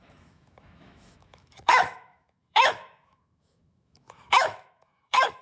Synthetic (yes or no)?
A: yes